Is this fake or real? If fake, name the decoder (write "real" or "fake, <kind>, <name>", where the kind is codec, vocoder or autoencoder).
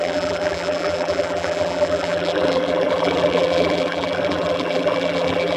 fake, vocoder, BigVGAN v2